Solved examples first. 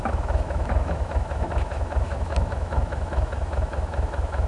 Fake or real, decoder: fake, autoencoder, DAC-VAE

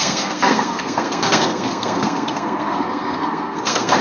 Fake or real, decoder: fake, codec, SNAC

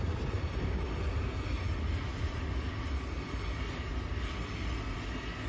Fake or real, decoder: real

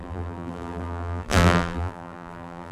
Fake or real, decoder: fake, vocoder, BigVGAN v2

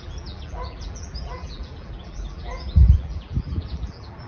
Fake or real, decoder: fake, vocoder, BigVGAN v2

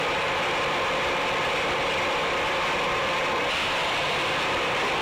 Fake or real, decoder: fake, vocoder, BigVGAN v2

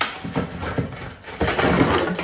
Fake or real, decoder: real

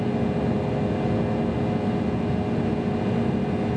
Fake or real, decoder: real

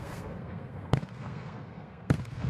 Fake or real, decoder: fake, codec, SNAC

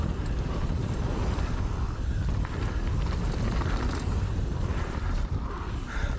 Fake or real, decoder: real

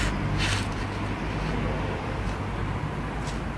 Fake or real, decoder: real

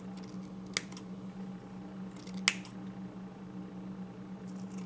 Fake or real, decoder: real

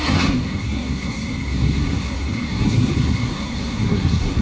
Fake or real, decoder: fake, codec, SNAC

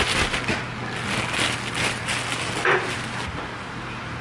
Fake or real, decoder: real